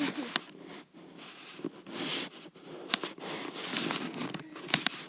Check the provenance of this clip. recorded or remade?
recorded